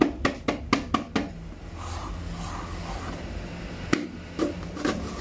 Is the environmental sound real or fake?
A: real